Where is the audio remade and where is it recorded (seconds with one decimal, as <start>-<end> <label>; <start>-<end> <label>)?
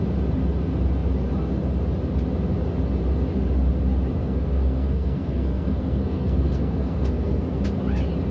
0.0-4.2 recorded; 4.2-7.6 remade; 7.6-8.3 recorded